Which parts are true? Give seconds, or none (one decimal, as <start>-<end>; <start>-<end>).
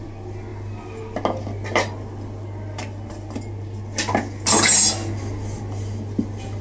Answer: 0.0-6.6